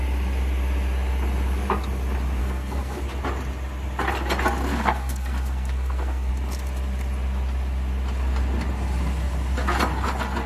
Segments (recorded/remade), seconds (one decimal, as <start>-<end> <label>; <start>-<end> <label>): 0.0-2.4 recorded; 2.4-3.0 remade; 3.0-4.7 recorded; 4.7-6.3 remade; 6.3-10.5 recorded